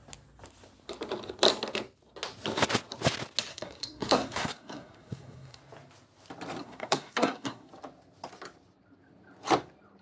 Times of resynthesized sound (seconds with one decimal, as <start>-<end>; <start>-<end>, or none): 3.5-5.6; 6.6-7.7